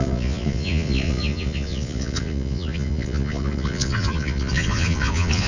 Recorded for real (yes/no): no